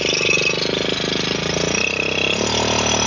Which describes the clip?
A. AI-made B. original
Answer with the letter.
B